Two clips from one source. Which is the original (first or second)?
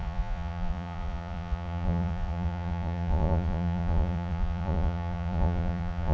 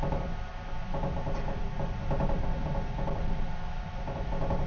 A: second